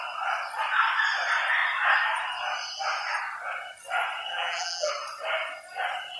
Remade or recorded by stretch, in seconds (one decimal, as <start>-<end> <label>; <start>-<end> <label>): 0.0-4.3 recorded; 4.3-4.9 remade; 4.9-6.2 recorded